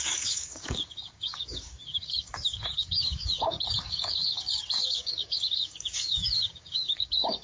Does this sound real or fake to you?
fake